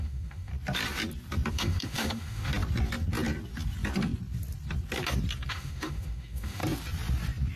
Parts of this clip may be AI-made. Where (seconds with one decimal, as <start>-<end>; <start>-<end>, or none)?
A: 0.0-0.5; 1.5-2.5; 5.5-6.6

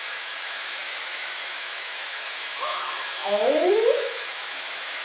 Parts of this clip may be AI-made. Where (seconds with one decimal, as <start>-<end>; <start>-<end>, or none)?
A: 0.0-5.0

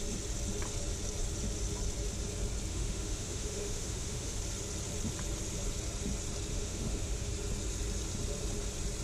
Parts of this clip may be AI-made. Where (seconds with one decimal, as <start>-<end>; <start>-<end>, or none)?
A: 2.7-4.4; 6.5-7.3

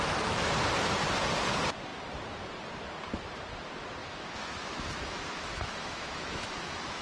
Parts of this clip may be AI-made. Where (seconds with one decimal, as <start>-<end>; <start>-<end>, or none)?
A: 4.0-7.0

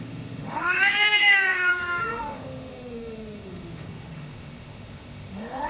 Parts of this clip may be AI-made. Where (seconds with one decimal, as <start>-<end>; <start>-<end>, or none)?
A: 0.0-5.7

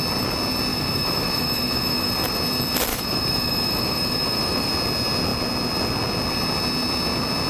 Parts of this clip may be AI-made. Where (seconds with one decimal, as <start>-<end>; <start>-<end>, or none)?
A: 0.7-2.1; 2.9-4.7

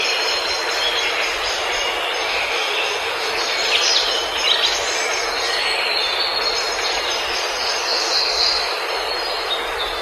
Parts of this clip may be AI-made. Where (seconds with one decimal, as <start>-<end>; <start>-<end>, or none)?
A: 2.3-3.3